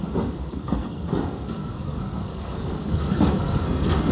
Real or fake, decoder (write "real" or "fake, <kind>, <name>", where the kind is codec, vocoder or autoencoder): fake, codec, SNAC